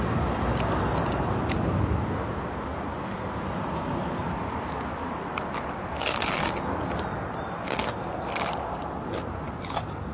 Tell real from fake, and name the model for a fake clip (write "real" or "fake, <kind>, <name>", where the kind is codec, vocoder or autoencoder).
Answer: real